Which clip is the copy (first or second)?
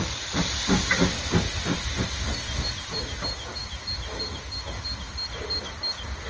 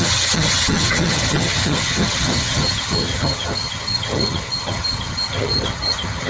second